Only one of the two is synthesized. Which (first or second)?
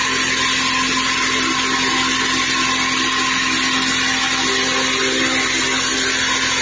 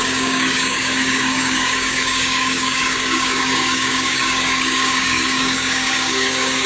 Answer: second